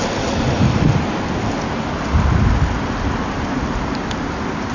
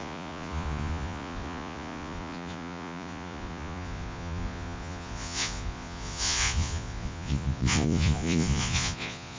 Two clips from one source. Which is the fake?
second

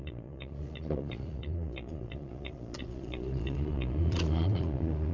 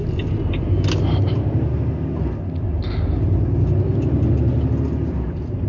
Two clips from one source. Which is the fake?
first